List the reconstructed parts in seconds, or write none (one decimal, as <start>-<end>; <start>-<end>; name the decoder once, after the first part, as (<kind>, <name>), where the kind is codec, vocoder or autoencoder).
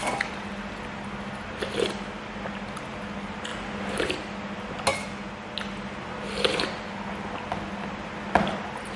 none